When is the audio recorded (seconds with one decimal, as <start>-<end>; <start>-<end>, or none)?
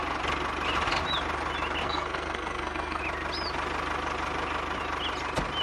0.0-1.8; 3.0-5.6